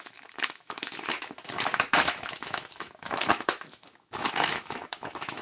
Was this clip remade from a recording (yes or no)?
yes